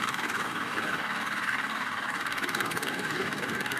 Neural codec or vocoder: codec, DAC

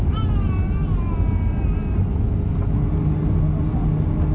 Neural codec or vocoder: none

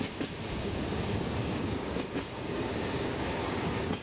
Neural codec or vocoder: codec, DAC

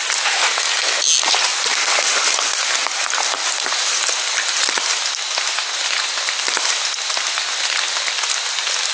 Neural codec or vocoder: none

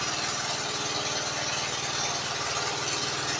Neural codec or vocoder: none